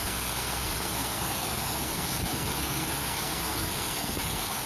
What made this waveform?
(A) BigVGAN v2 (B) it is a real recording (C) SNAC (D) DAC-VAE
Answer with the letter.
C